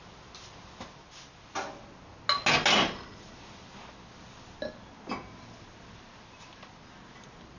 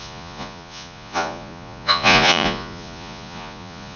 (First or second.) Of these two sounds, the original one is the first